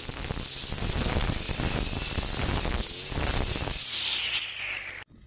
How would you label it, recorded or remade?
recorded